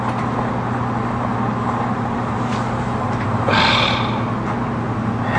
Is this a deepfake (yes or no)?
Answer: no